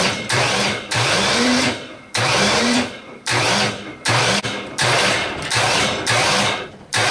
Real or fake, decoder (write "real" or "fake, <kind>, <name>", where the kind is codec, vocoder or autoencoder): fake, vocoder, BigVGAN v2